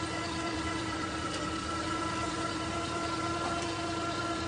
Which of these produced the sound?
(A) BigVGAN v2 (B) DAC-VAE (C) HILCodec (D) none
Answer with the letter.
A